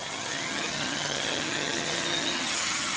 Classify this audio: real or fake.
fake